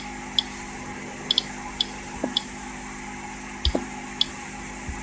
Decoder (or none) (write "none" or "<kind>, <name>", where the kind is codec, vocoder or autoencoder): none